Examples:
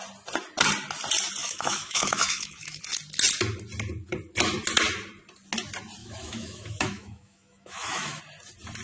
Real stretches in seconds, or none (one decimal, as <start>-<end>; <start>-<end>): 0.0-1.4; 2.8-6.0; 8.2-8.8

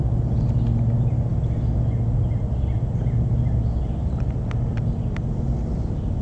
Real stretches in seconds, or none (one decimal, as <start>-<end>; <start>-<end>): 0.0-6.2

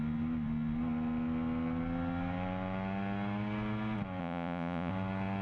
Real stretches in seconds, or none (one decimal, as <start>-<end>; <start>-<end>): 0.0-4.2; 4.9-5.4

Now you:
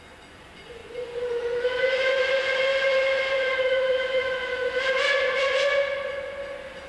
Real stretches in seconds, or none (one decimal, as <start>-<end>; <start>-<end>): none